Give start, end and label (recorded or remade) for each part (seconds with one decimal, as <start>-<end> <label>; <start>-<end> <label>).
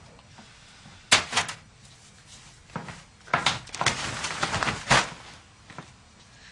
0.0-6.5 recorded